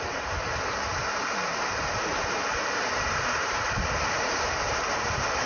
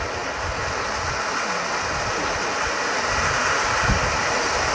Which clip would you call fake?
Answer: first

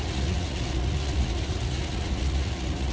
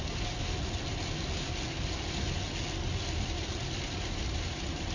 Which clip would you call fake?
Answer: first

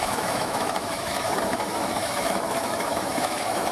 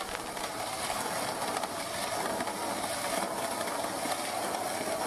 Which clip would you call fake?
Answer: first